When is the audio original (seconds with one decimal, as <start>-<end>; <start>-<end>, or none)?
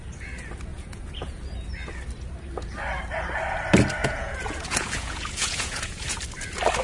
0.0-0.7; 1.4-4.0; 6.2-6.8